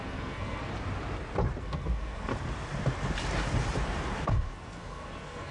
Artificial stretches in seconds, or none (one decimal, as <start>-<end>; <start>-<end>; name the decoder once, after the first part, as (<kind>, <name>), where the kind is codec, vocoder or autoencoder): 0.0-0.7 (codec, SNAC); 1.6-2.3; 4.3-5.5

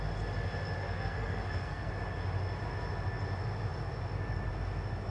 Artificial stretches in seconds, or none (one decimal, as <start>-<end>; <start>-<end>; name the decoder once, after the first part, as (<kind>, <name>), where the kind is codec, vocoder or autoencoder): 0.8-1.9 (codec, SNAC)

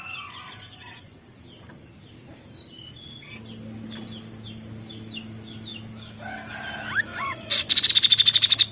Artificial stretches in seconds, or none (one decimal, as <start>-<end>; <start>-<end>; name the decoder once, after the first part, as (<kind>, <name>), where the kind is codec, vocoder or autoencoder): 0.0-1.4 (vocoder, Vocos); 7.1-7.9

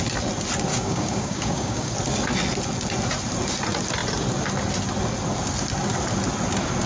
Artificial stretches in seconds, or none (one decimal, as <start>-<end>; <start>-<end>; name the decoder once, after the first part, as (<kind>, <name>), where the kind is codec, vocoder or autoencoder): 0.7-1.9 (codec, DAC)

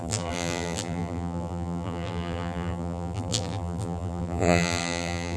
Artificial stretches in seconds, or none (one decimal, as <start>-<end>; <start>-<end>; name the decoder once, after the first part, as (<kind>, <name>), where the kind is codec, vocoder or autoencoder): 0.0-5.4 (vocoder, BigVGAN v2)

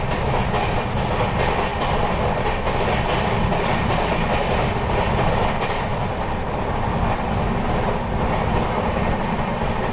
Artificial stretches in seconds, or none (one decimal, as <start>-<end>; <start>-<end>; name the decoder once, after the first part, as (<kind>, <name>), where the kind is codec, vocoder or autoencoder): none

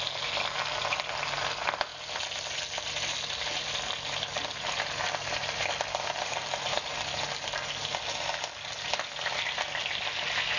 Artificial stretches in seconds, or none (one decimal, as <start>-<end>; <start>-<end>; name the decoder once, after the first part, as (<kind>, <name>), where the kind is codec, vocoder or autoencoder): none